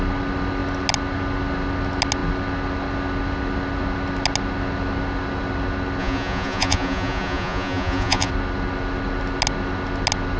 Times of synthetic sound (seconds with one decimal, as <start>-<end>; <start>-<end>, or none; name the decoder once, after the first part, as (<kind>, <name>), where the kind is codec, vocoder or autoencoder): 6.0-8.3 (vocoder, Vocos)